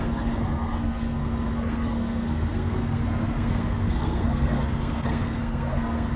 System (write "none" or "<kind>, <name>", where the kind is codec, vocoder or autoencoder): codec, SNAC